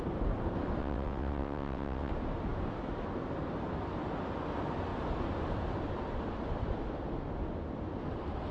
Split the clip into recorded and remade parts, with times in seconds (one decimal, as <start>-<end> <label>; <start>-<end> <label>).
0.0-0.8 recorded; 0.8-2.1 remade; 2.1-8.5 recorded